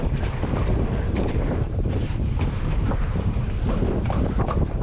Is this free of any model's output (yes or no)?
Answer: no